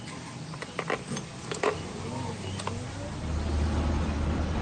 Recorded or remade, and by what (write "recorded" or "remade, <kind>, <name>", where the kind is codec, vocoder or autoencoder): recorded